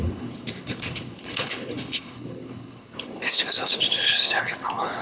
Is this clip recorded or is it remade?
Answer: remade